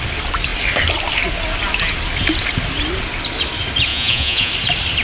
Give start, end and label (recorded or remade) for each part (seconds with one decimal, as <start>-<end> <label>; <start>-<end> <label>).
0.0-3.9 recorded; 3.9-4.5 remade; 4.5-5.0 recorded